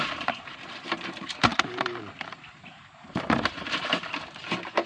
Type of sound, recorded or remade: remade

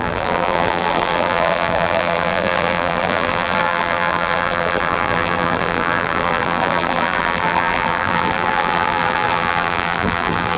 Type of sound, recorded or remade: remade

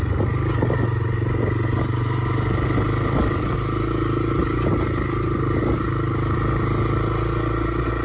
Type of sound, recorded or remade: recorded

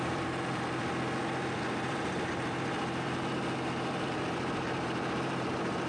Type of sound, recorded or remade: remade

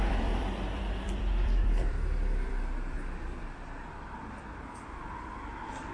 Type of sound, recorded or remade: remade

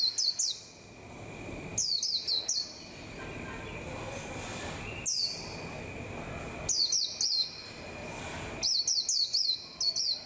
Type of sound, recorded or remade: recorded